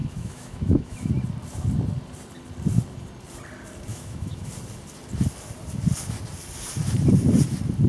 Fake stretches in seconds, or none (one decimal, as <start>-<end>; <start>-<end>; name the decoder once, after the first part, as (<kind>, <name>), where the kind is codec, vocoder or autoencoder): 0.0-1.1 (autoencoder, DAC-VAE); 3.9-4.5